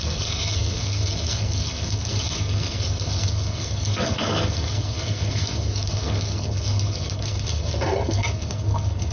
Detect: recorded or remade remade